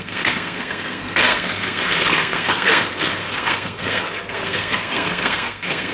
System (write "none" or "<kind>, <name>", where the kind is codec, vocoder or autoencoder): codec, SNAC